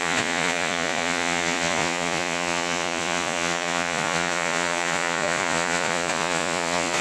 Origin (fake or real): fake